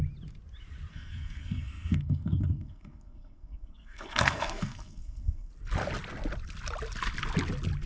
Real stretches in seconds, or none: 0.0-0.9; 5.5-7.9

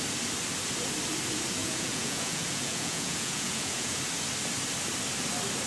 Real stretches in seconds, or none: 0.0-1.6; 4.0-5.7

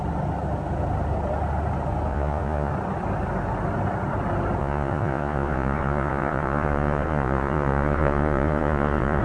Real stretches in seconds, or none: 0.0-2.1; 2.7-4.6

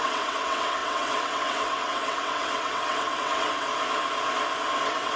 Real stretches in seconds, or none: 3.7-4.8

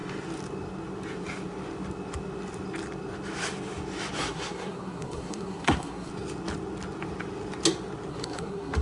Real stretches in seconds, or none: 0.0-4.2; 6.1-8.1

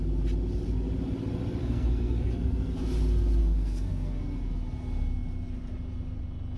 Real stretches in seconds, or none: 0.0-1.6; 2.8-3.4; 4.2-6.6

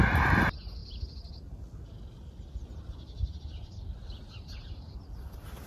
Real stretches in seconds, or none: 0.0-5.7